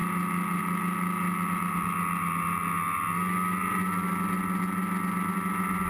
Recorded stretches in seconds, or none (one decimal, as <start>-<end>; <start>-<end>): 0.0-5.9